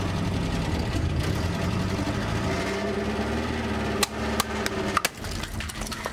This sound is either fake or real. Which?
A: real